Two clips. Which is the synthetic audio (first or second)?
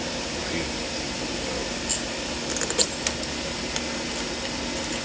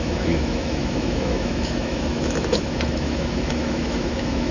second